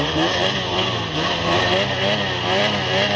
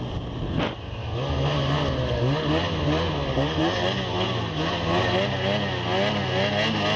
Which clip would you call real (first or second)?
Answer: second